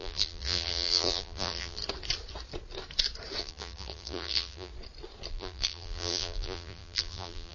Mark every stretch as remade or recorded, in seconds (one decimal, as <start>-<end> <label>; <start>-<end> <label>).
0.0-1.8 remade; 1.8-3.4 recorded; 3.4-4.7 remade; 4.7-5.3 recorded; 5.3-7.5 remade